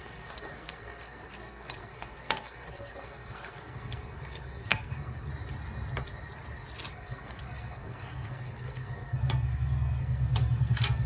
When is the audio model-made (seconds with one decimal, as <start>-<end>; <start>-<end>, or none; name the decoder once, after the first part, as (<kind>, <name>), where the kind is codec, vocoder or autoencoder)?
0.0-5.3 (codec, SNAC); 6.9-11.1